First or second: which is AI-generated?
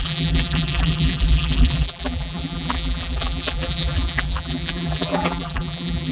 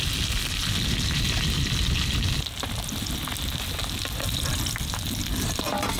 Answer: first